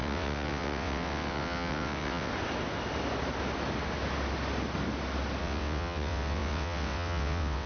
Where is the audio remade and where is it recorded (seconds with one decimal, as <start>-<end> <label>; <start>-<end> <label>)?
0.0-2.3 remade; 2.3-5.4 recorded; 5.4-7.7 remade